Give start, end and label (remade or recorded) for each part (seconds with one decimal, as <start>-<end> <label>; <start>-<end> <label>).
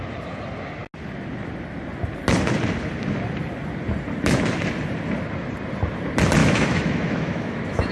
0.0-6.4 recorded; 6.4-7.9 remade